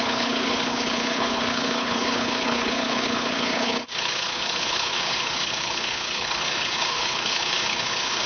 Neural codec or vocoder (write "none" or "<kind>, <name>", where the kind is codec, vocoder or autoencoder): codec, HILCodec